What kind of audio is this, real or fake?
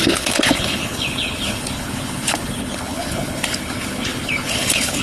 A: fake